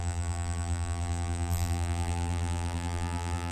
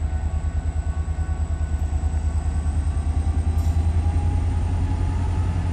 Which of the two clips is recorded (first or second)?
second